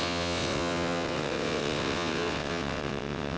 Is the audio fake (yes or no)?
yes